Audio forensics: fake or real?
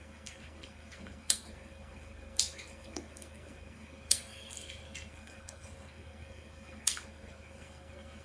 fake